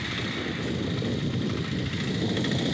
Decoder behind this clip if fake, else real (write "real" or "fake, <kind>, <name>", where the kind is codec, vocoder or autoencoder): real